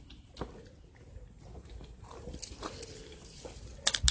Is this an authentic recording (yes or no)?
yes